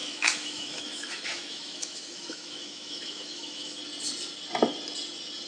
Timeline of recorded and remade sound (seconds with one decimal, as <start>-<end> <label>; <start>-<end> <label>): 0.0-3.8 remade; 3.8-5.5 recorded